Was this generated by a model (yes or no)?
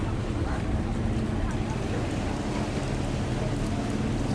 no